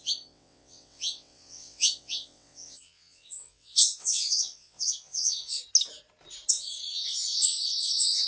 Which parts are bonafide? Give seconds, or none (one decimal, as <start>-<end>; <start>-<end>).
5.6-6.5